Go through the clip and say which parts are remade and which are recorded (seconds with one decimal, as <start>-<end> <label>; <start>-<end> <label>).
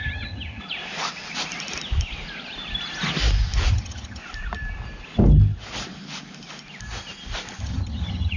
0.0-0.6 remade; 0.6-3.7 recorded; 3.7-4.2 remade; 4.2-7.6 recorded; 7.6-8.4 remade